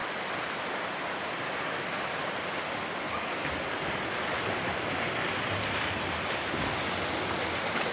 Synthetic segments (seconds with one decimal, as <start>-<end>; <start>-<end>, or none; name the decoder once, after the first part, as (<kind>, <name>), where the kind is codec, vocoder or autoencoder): none